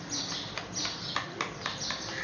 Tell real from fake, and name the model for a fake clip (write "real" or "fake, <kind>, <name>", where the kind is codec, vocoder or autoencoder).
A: real